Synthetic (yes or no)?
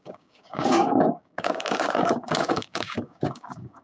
yes